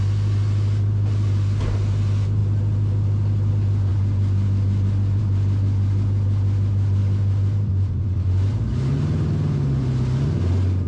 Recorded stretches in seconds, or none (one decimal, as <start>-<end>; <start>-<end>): 0.0-10.9